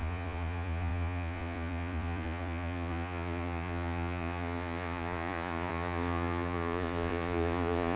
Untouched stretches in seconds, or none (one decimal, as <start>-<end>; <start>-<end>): none